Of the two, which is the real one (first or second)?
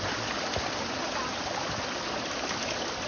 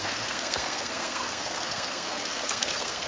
first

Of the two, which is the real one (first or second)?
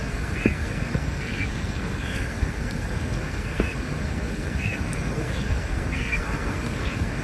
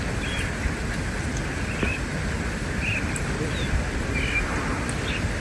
second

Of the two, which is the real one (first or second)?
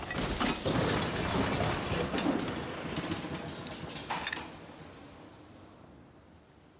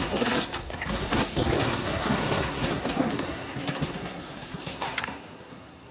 first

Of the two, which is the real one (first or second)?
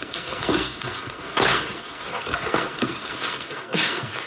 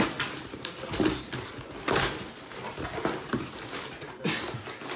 second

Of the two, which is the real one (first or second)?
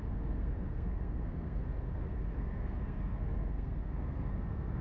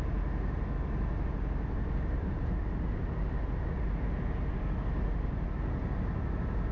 second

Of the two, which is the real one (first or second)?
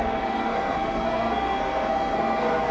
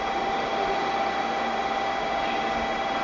second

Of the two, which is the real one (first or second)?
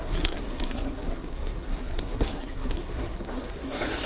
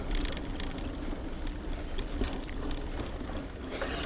second